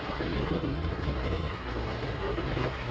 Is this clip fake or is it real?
fake